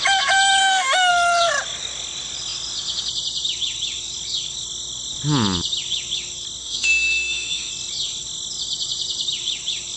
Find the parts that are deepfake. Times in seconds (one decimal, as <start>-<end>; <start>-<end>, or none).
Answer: 0.6-1.1; 6.6-7.7